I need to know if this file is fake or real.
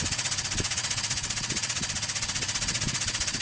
fake